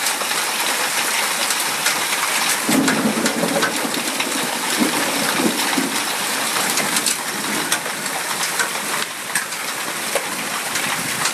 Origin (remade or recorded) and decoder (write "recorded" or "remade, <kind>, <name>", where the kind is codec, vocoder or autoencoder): recorded